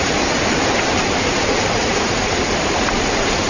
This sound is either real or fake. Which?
real